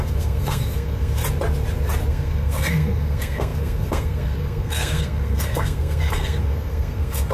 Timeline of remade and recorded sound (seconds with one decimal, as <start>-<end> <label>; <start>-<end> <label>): 0.0-1.2 remade; 1.2-2.1 recorded; 2.1-7.3 remade